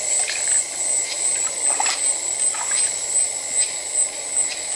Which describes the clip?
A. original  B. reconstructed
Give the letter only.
A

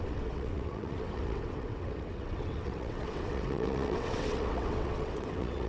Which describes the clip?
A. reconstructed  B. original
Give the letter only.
A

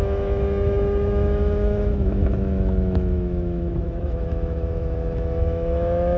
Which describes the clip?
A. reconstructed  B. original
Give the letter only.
A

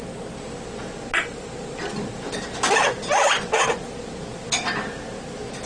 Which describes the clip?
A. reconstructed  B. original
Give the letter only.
B